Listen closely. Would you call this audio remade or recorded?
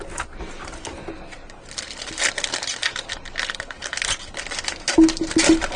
recorded